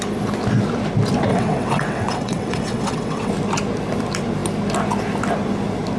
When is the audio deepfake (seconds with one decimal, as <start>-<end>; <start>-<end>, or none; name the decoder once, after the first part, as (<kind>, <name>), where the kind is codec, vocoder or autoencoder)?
1.3-3.3 (vocoder, WaveNeXt)